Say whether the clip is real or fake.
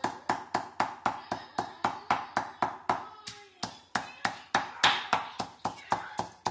real